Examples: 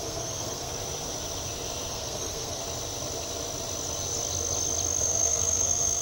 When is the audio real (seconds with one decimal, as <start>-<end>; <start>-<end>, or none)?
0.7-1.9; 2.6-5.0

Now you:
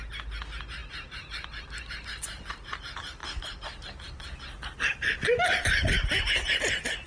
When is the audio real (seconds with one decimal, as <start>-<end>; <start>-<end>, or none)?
0.0-7.1

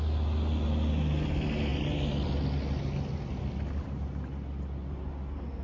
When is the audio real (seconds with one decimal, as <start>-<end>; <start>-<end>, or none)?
0.0-5.6

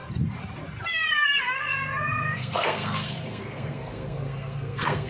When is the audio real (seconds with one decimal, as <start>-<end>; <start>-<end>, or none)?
0.0-0.9